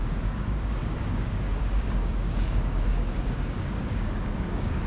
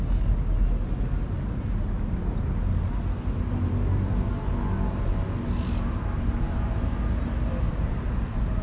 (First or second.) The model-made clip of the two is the first